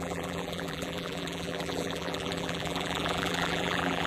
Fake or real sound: fake